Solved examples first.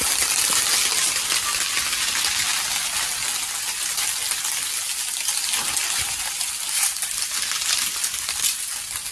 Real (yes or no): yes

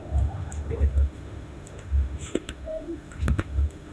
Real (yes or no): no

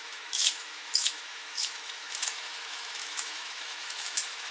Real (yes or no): no